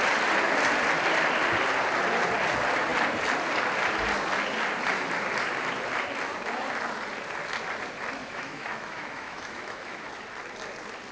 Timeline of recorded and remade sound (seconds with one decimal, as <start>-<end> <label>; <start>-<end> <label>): 0.0-8.2 recorded; 8.2-10.1 remade; 10.1-11.1 recorded